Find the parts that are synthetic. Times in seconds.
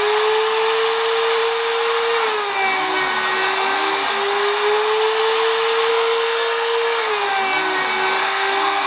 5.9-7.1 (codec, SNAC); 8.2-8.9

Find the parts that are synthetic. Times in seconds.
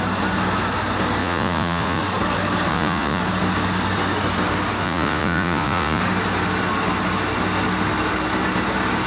1.2-2.0 (vocoder, Vocos); 2.7-3.2; 4.8-6.0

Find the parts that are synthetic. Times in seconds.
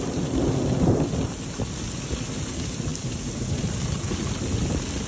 none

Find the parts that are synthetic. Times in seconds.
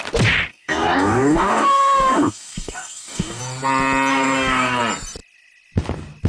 0.5-3.4 (codec, DAC); 4.1-4.8